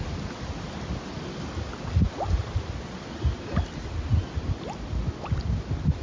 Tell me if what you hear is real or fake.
real